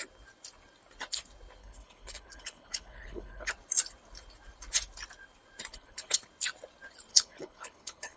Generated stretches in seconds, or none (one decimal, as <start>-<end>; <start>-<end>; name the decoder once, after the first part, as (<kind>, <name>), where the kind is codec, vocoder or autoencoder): 1.6-3.5 (codec, HILCodec); 5.7-6.2; 7.1-8.2